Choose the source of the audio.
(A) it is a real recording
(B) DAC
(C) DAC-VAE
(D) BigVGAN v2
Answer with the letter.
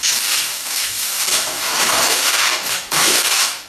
B